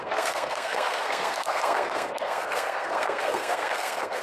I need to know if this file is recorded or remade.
remade